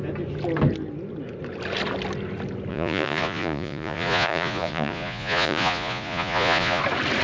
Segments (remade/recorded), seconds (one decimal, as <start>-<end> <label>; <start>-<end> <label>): 0.0-2.7 recorded; 2.7-6.8 remade; 6.8-7.2 recorded